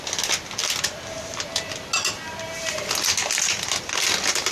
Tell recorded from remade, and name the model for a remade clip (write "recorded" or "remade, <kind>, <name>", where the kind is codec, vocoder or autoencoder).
recorded